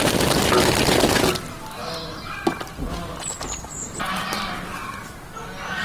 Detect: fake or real real